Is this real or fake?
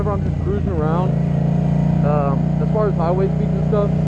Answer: real